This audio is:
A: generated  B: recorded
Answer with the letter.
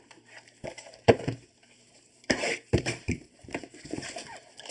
A